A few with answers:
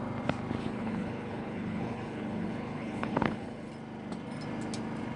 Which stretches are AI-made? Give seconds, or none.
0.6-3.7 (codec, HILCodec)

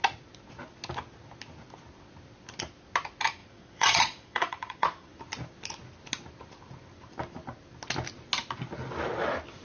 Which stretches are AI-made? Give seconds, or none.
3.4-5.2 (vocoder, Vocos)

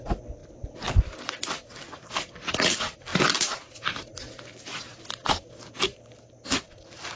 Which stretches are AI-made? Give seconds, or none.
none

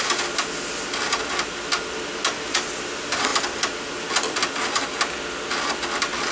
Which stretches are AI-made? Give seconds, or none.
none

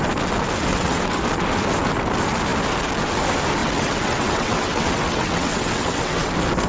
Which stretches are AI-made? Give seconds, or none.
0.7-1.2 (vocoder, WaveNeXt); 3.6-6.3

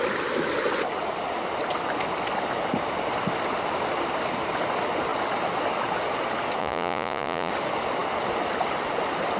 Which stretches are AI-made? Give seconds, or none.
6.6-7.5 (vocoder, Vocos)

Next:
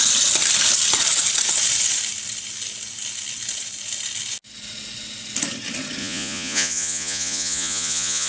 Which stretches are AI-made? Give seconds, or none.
6.0-8.3 (vocoder, Vocos)